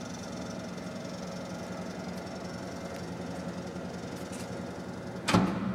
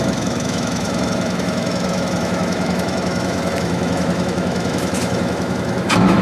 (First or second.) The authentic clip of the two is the first